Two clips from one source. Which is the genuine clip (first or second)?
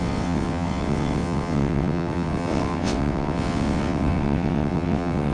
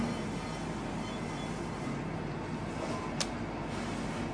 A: second